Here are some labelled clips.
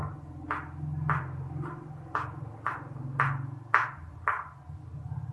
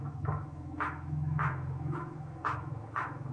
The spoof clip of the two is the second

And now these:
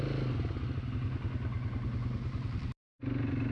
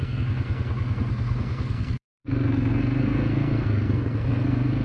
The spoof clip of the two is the second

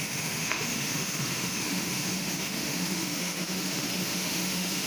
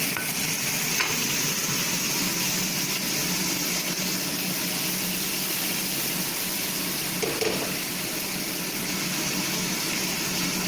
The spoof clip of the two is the first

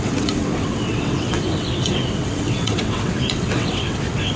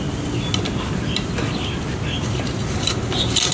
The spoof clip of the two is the first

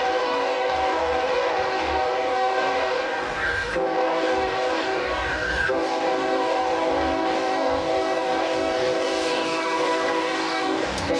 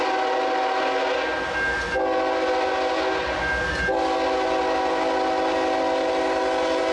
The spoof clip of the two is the first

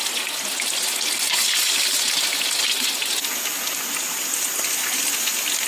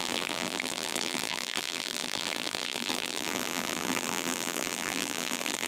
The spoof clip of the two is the second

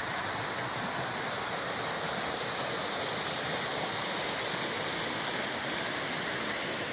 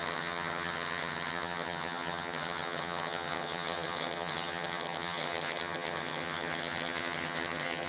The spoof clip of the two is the second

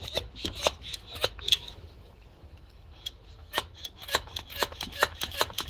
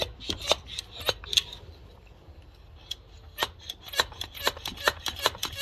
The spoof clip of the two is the first